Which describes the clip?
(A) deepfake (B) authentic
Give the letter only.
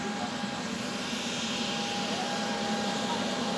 B